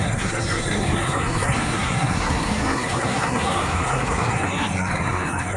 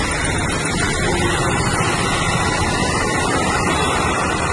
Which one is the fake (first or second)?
first